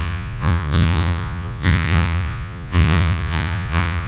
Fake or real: fake